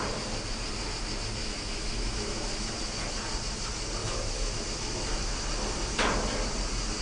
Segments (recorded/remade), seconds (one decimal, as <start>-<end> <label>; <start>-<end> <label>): 0.0-1.4 recorded; 1.4-2.8 remade; 2.8-4.0 recorded; 4.0-4.5 remade; 4.5-7.0 recorded